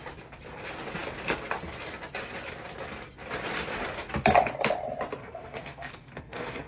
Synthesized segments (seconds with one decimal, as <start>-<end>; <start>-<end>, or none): 5.2-6.7